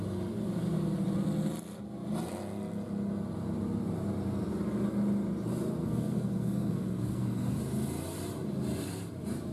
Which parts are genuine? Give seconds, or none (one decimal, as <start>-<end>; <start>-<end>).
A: 0.0-5.8; 7.6-9.5